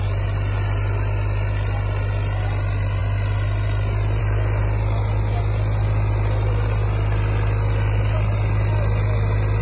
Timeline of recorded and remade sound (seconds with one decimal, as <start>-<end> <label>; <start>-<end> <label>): 0.0-9.6 recorded